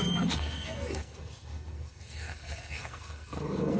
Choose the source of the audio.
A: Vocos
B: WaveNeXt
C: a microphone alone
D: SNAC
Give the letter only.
D